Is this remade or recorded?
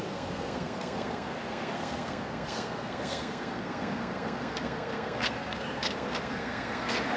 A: remade